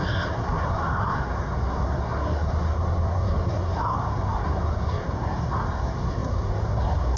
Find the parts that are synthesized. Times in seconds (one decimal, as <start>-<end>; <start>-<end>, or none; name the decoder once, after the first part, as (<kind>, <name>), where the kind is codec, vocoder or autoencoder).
0.0-7.2 (codec, SNAC)